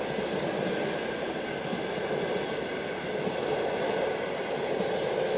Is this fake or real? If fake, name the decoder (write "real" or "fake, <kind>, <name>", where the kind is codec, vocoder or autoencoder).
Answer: real